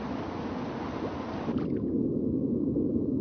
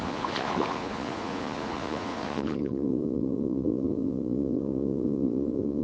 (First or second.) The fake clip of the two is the second